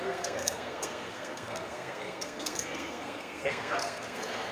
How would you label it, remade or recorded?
remade